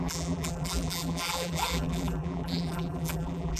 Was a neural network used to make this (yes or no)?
yes